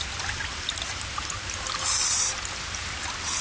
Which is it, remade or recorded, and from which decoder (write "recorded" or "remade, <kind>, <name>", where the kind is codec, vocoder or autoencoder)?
recorded